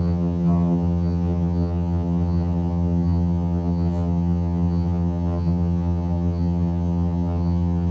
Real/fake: fake